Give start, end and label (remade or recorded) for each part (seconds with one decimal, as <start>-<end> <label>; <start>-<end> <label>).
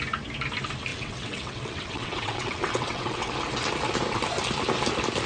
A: 0.0-0.9 recorded; 0.9-3.3 remade; 3.3-5.3 recorded